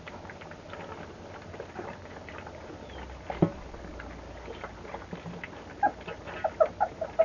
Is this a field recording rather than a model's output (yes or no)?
no